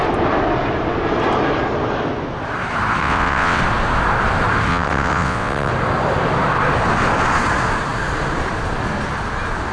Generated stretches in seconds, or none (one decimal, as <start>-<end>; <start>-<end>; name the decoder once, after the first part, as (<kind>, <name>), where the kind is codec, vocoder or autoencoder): 3.0-3.6 (vocoder, WaveNeXt); 4.7-5.7